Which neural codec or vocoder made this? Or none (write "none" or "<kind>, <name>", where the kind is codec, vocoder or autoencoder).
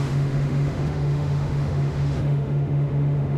autoencoder, DAC-VAE